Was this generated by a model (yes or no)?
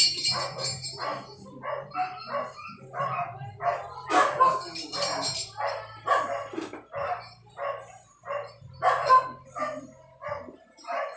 no